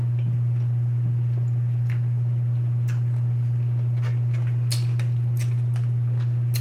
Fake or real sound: real